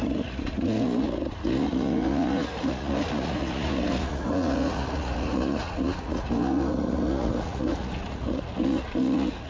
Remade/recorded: remade